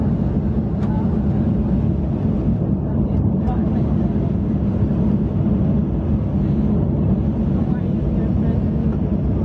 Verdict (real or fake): real